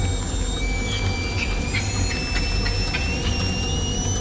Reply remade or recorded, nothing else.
recorded